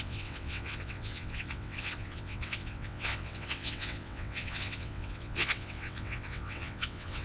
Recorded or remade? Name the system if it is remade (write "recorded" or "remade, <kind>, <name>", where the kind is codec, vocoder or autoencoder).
remade, vocoder, WaveNeXt